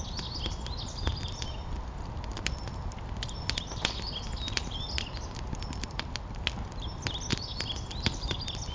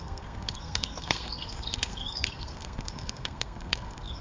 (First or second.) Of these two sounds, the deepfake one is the second